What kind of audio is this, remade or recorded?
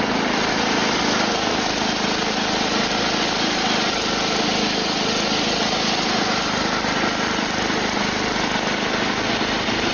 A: recorded